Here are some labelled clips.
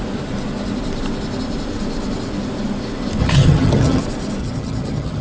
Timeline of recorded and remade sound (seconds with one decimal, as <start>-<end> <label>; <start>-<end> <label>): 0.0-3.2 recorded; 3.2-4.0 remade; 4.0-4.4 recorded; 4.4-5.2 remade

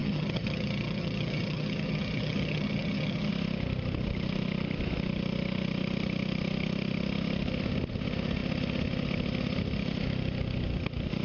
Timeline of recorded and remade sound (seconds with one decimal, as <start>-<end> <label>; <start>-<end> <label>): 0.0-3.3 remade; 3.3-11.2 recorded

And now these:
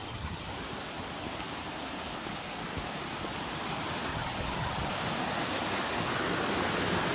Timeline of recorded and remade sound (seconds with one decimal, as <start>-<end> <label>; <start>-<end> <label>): 0.0-0.5 remade; 0.5-4.1 recorded; 4.1-4.9 remade; 4.9-7.1 recorded

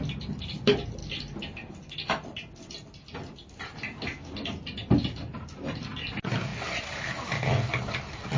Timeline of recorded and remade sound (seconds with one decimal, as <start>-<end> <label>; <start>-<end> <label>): 0.0-8.4 recorded

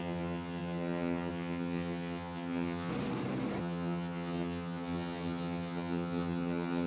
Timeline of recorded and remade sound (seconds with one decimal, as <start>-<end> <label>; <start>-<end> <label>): 0.0-2.9 remade; 2.9-3.6 recorded; 3.6-6.9 remade

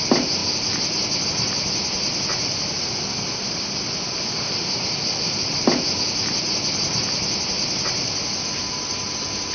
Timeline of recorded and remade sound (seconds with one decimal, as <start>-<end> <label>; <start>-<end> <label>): 0.0-9.5 recorded

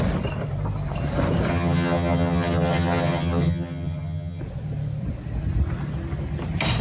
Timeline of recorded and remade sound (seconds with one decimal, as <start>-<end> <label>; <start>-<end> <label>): 0.0-1.5 recorded; 1.5-4.4 remade; 4.4-6.8 recorded